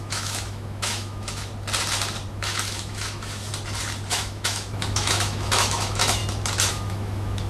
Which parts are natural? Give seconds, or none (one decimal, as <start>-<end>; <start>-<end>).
1.5-2.3; 3.5-4.1; 6.2-6.7